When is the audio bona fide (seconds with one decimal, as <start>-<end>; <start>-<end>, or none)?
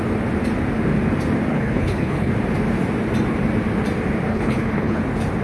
0.0-1.5; 2.3-4.3; 5.0-5.4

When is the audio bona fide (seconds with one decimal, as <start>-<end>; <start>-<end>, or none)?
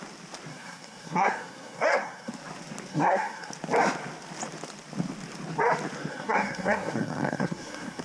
0.0-0.5; 2.3-2.9; 3.5-6.1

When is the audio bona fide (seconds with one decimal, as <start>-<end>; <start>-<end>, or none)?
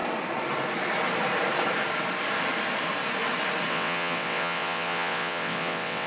0.0-3.7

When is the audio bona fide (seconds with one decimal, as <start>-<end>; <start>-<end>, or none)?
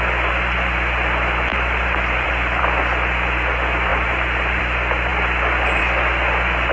0.0-1.5; 2.6-3.9; 4.6-6.7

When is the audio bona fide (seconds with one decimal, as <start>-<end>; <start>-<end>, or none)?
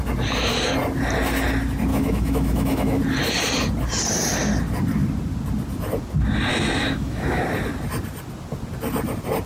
0.0-1.9; 3.0-6.5; 7.4-9.5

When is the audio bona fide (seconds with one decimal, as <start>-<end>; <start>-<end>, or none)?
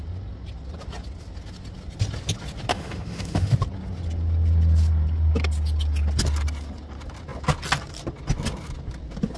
0.0-2.7; 3.5-9.4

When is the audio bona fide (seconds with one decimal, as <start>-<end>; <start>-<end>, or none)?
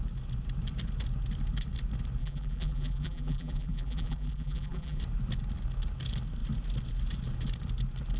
0.0-2.2; 5.0-8.2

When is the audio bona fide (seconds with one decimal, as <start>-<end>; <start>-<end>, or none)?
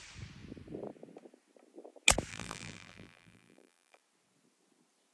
0.0-2.3; 4.0-5.1